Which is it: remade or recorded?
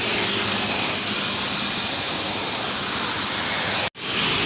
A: recorded